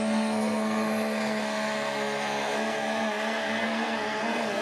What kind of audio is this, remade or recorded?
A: remade